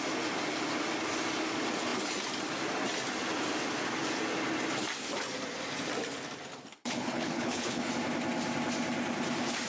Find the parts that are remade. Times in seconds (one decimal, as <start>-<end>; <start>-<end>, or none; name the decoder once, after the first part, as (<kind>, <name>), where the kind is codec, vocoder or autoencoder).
6.7-7.9 (codec, HILCodec)